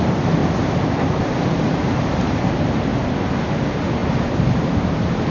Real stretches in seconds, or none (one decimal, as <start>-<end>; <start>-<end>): 0.4-1.0; 2.9-3.5